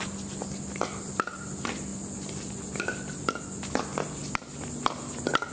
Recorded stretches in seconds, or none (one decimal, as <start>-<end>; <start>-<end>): 0.0-5.5